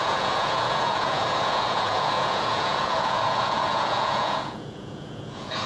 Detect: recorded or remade remade